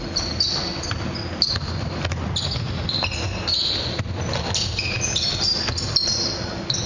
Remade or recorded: recorded